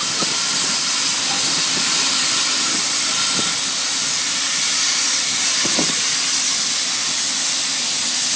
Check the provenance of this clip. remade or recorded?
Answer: recorded